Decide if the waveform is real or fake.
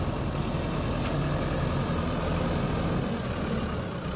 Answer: real